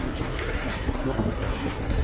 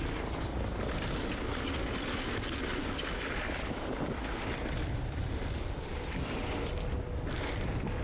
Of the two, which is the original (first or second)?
second